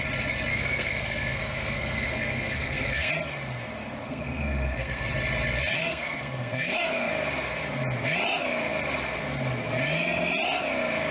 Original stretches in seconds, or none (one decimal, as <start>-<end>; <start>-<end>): 0.0-0.5; 3.1-4.0; 5.1-5.8; 7.1-11.1